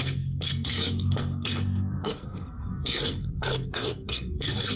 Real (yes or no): no